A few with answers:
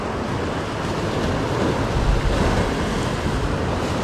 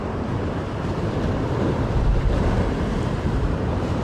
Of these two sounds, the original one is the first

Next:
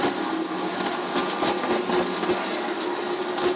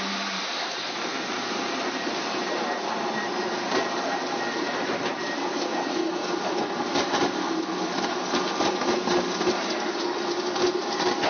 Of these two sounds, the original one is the first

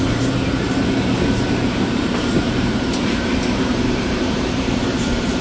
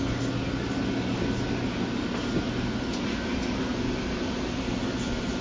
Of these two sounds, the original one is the second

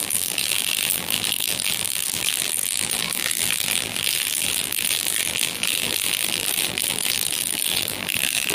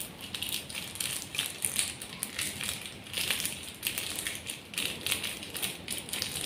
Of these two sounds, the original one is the second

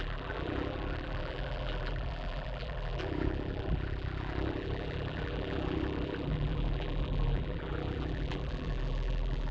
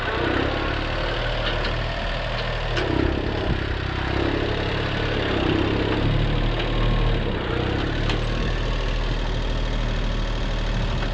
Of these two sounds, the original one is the second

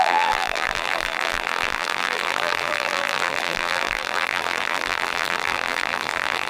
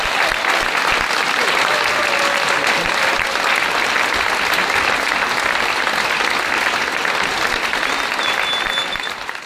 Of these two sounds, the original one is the second